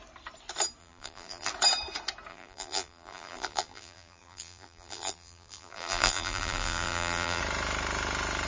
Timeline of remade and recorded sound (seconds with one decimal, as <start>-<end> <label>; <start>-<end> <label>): 0.0-0.8 recorded; 0.8-1.5 remade; 1.5-2.3 recorded; 2.3-7.4 remade; 7.4-8.5 recorded